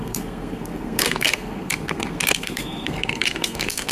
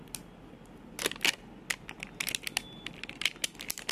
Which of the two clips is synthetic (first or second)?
first